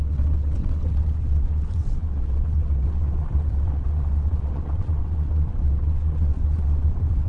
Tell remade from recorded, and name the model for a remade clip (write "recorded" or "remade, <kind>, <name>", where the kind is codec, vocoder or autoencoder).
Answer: remade, vocoder, WaveNeXt